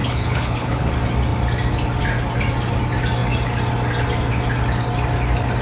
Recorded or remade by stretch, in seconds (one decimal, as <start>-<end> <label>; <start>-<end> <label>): 0.0-0.9 remade; 0.9-5.6 recorded